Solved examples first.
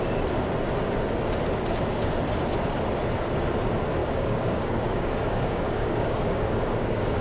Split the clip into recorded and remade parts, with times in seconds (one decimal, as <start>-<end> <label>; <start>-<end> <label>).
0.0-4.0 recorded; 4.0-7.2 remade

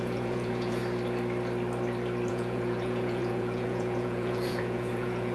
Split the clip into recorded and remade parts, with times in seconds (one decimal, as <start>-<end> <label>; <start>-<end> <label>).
0.0-0.8 remade; 0.8-2.3 recorded; 2.3-5.3 remade

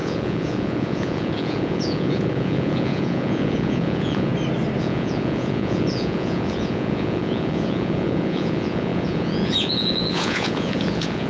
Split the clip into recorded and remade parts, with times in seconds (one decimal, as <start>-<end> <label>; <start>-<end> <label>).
0.0-4.3 remade; 4.3-4.8 recorded; 4.8-11.3 remade

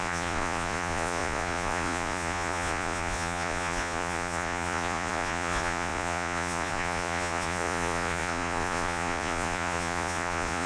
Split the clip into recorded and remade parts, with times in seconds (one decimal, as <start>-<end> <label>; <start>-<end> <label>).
0.0-10.7 remade

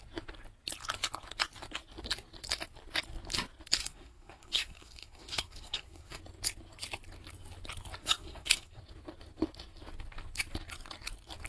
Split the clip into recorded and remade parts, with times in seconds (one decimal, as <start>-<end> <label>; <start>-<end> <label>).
0.0-3.8 recorded; 3.8-6.2 remade; 6.2-8.0 recorded; 8.0-8.8 remade; 8.8-11.5 recorded